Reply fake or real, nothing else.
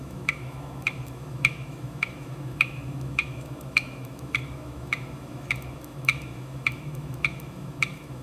fake